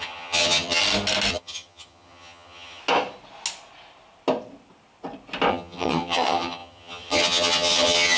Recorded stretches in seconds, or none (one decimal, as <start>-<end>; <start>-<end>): 0.8-1.3; 2.8-5.5